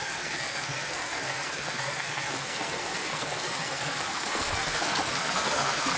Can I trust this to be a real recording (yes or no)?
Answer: no